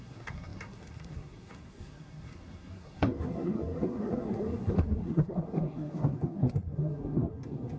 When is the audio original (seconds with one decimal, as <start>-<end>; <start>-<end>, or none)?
none